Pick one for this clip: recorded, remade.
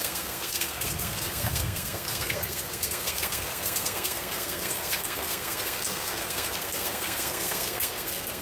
remade